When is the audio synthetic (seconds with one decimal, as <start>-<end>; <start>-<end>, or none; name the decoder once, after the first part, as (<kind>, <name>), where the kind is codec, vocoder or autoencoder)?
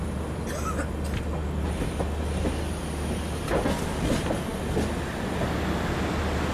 none